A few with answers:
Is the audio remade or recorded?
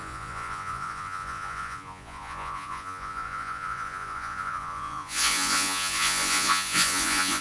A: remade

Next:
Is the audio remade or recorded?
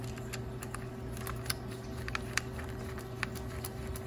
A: recorded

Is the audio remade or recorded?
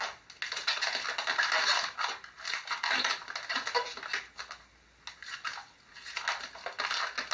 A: recorded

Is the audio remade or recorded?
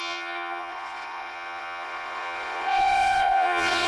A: remade